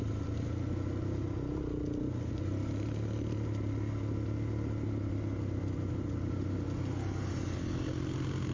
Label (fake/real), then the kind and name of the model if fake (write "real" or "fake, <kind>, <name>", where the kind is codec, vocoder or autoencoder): real